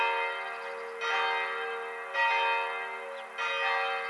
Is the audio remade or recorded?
recorded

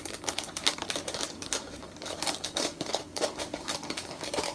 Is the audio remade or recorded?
remade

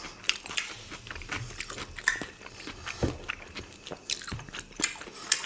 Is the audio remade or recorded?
recorded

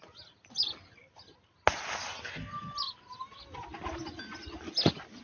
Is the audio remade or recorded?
recorded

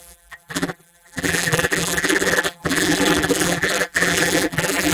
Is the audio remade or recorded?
remade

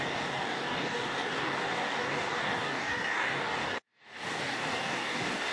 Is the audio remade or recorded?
remade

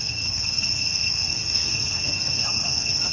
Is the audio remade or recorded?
remade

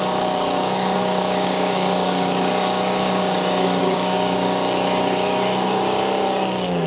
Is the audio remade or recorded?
remade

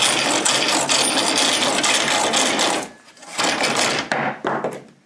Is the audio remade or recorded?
recorded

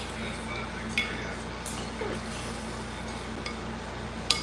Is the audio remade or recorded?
recorded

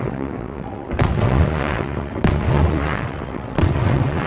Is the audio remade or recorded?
remade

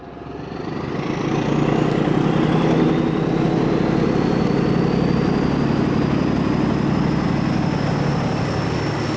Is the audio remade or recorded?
recorded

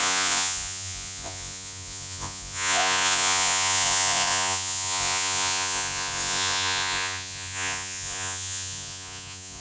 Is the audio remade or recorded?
remade